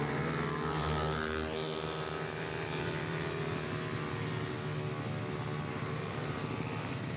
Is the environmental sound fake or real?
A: real